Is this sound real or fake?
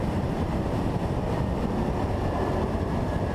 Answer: real